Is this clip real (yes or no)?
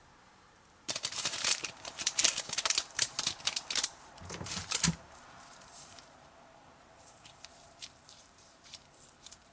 no